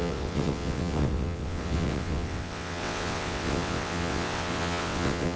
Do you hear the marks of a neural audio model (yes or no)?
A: yes